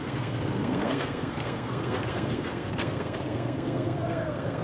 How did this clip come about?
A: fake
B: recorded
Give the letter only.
A